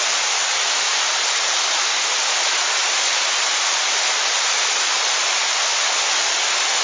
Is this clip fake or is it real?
real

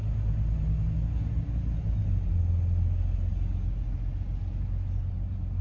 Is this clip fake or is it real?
real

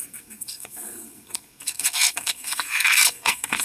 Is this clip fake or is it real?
fake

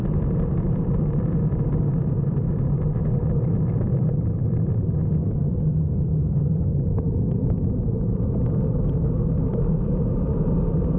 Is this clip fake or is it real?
fake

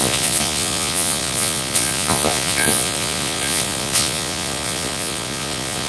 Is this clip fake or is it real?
fake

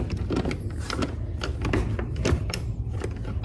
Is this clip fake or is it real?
real